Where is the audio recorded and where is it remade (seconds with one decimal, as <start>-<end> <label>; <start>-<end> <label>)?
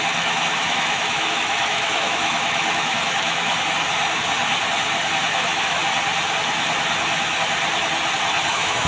0.0-3.5 remade; 3.5-5.3 recorded; 5.3-5.8 remade; 5.8-8.5 recorded; 8.5-8.9 remade